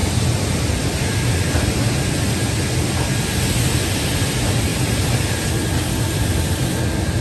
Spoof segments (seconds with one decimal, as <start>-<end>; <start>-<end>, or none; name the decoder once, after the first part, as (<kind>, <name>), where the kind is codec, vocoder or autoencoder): none